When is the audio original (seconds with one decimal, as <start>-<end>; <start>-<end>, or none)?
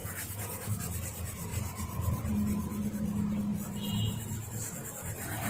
0.7-5.5